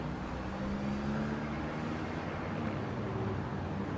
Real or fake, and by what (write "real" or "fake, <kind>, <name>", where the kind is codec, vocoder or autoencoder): real